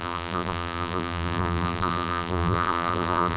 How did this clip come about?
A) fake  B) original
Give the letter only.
A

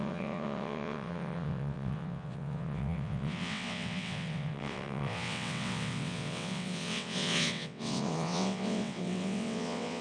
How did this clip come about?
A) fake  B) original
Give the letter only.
A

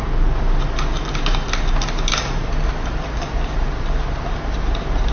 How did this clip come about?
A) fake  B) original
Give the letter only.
B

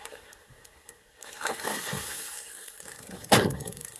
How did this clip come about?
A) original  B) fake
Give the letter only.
B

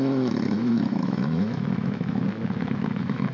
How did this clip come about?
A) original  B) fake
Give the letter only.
B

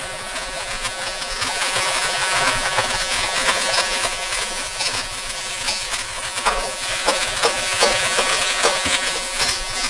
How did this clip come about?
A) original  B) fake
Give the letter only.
B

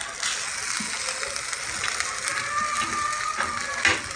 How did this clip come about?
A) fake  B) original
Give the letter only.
B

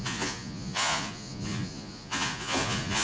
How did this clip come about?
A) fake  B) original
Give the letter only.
A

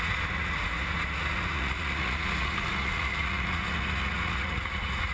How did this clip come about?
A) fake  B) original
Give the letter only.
A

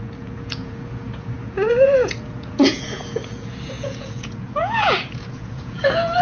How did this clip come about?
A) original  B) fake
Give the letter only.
B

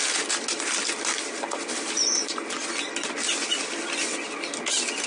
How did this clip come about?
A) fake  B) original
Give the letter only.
B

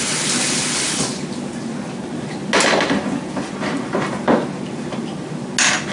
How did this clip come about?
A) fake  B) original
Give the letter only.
B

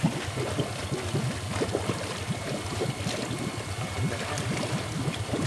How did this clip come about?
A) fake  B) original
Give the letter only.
B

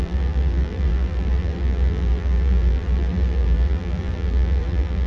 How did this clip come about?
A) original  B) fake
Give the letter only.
B